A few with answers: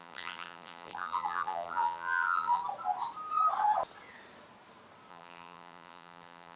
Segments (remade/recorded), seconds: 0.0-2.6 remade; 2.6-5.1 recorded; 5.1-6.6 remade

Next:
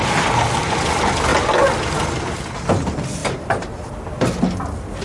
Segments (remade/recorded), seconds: 0.0-3.2 recorded; 3.2-3.9 remade; 3.9-5.0 recorded